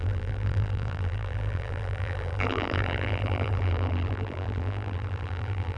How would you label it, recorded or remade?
remade